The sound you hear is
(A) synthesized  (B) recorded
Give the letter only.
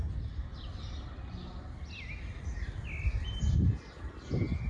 B